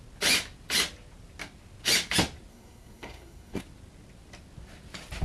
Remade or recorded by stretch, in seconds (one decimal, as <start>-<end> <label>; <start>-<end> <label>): 0.0-2.5 recorded; 2.5-3.6 remade; 3.6-5.2 recorded